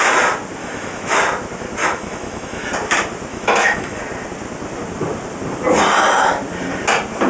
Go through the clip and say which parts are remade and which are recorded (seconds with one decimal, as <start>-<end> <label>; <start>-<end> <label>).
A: 0.0-0.6 recorded; 0.6-1.2 remade; 1.2-1.8 recorded; 1.8-2.7 remade; 2.7-3.3 recorded; 3.3-4.0 remade; 4.0-7.3 recorded